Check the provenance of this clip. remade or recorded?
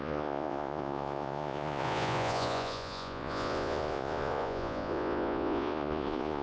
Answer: remade